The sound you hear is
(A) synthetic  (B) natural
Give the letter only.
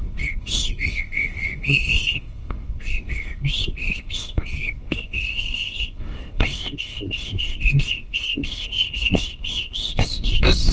A